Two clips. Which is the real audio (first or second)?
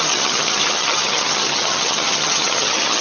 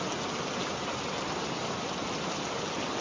second